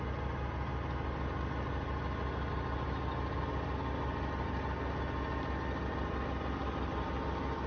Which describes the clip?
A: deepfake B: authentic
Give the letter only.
B